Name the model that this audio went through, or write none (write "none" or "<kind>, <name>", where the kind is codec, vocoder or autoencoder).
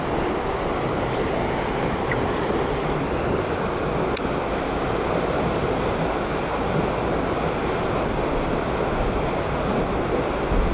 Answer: none